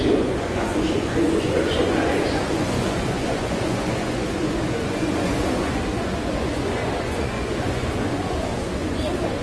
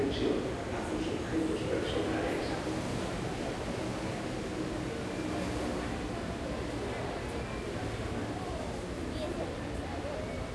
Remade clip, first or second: first